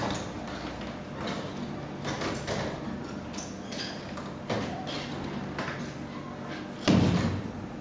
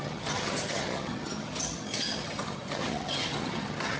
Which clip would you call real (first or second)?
first